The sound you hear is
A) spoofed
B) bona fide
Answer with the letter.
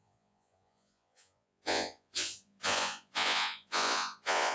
A